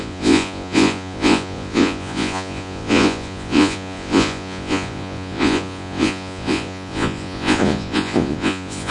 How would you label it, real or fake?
fake